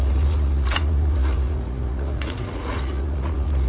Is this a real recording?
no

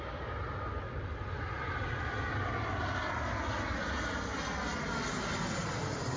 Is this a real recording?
yes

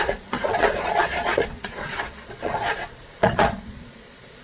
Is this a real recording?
no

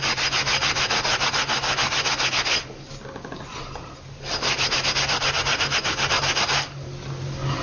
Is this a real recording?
yes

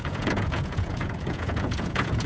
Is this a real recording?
no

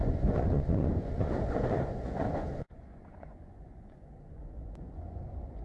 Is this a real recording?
no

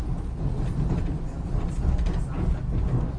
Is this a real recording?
yes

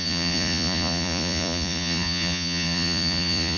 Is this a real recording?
no